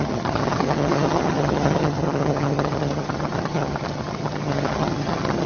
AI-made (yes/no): yes